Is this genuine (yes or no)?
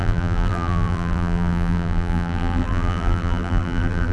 no